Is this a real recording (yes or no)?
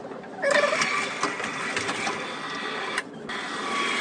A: yes